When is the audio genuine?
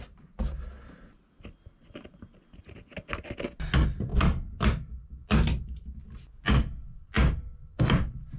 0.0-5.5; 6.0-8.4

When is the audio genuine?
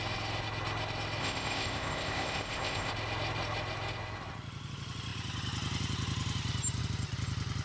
0.0-1.2; 2.9-7.6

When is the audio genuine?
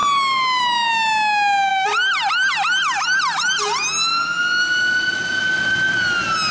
0.0-6.5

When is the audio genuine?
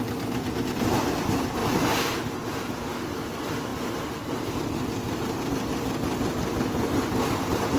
0.0-7.8